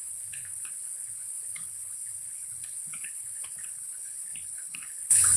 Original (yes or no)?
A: no